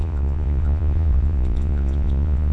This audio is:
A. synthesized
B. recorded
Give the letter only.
A